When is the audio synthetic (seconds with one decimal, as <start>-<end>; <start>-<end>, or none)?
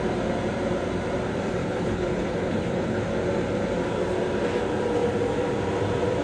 1.6-3.0